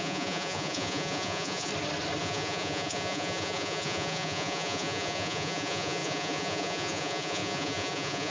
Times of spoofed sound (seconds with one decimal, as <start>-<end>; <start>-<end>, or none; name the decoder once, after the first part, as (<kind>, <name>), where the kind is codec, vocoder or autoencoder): 0.0-1.7 (vocoder, Vocos); 2.2-8.3